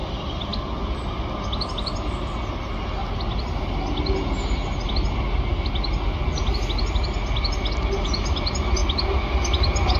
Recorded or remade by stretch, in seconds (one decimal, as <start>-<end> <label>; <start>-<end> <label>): 0.0-10.0 recorded